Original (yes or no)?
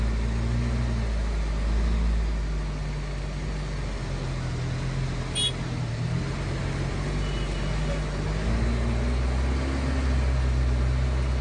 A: yes